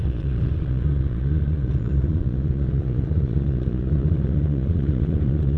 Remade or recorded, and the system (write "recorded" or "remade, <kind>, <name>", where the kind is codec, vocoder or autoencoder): remade, vocoder, Vocos